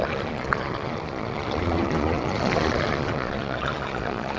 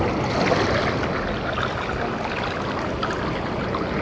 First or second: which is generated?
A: first